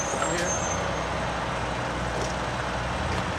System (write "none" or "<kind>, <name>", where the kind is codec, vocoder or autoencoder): none